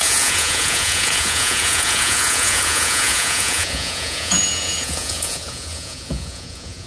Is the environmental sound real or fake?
fake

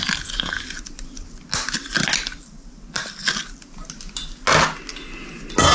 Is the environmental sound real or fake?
real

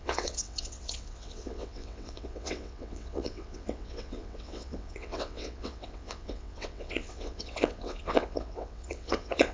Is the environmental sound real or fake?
fake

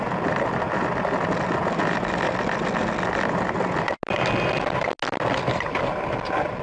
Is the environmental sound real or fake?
real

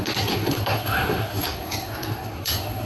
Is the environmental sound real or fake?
fake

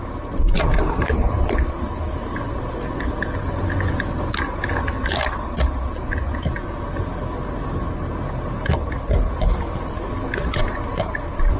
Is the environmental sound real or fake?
real